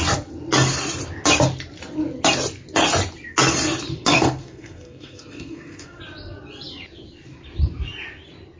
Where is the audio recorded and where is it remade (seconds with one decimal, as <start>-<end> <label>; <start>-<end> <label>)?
0.0-4.1 recorded; 4.1-6.0 remade; 6.0-8.6 recorded